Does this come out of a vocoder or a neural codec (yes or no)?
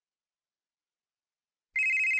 no